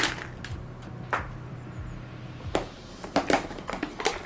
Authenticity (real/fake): real